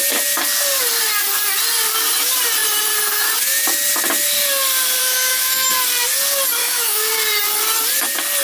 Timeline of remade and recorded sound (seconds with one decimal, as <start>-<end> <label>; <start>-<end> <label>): 0.0-5.0 recorded; 5.0-5.7 remade; 5.7-6.6 recorded; 6.6-7.1 remade; 7.1-8.4 recorded